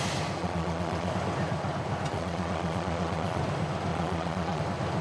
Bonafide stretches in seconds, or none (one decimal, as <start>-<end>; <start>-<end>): 0.0-0.4; 1.1-2.1; 3.4-3.9; 4.6-5.0